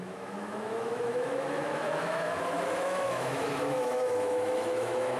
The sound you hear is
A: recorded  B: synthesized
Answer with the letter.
B